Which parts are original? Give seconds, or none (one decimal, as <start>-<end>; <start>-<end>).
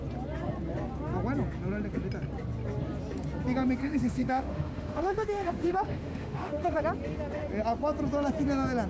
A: 0.0-3.8; 6.8-8.9